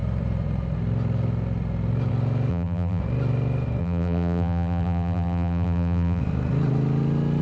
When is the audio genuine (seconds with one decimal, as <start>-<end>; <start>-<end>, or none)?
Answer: 0.0-2.5; 3.0-3.8; 6.2-7.4